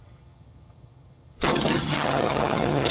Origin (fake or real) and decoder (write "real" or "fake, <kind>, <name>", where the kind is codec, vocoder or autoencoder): fake, vocoder, HiFi-GAN